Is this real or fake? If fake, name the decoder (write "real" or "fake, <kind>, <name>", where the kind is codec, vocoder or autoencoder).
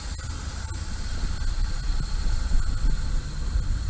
real